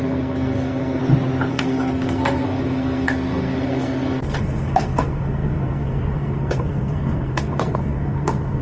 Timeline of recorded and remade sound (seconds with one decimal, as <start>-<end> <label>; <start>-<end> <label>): 0.0-1.0 remade; 1.0-1.5 recorded; 1.5-8.6 remade